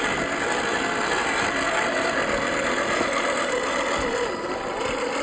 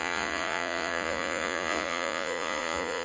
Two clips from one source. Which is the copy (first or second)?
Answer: second